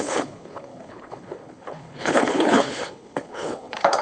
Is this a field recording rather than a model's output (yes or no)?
no